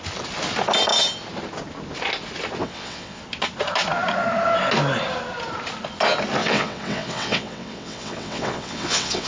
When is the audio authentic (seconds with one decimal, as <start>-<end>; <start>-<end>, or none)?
0.0-2.6; 3.2-6.4